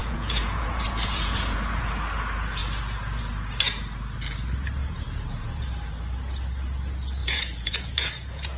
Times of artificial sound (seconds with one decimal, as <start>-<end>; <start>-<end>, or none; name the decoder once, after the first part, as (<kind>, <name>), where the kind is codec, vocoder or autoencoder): 0.0-1.8 (vocoder, Vocos); 4.8-5.5; 7.2-8.6